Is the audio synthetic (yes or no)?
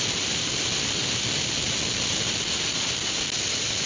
no